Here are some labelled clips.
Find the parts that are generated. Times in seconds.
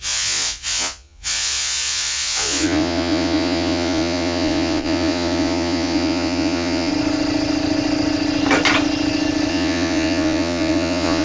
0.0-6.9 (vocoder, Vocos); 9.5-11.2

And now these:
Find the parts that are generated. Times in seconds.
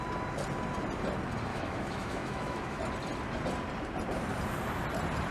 1.5-2.8 (autoencoder, DAC-VAE)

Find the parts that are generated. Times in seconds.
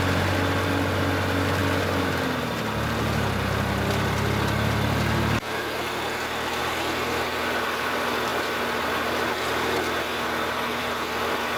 none